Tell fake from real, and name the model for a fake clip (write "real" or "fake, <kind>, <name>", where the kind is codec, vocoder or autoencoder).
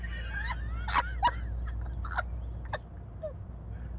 real